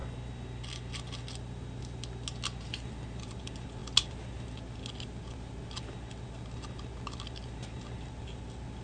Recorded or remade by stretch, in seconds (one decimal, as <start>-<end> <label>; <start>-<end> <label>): 0.0-2.7 recorded; 2.7-3.4 remade; 3.4-8.8 recorded

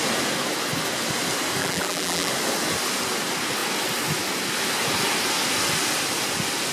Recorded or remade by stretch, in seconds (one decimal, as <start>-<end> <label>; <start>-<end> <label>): 0.0-1.6 recorded; 1.6-2.3 remade; 2.3-6.7 recorded